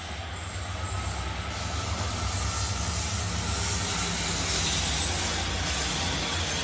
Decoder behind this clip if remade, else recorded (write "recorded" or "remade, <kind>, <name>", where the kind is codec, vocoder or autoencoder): recorded